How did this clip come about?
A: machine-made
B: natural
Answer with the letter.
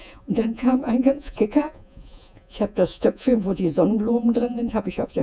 A